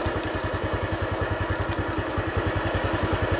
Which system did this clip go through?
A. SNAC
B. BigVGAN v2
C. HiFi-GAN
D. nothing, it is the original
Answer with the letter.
D